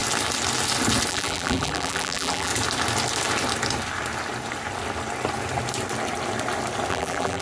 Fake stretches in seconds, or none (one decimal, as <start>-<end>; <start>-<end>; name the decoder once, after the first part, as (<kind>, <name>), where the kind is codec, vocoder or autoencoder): 1.1-2.5 (vocoder, BigVGAN v2); 6.9-7.4

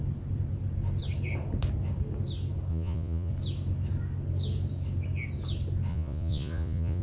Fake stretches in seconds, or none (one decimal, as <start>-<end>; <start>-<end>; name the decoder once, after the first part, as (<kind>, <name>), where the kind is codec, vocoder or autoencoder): 2.7-3.3 (vocoder, Vocos); 5.9-7.0

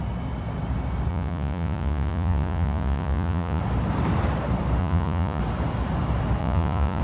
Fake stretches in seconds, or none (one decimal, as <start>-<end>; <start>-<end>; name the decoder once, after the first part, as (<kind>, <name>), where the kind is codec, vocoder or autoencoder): 1.1-3.6 (vocoder, Vocos); 4.8-5.4; 6.4-7.0